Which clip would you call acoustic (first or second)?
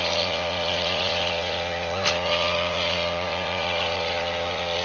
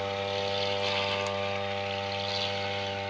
second